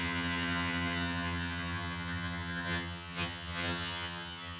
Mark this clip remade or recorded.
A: remade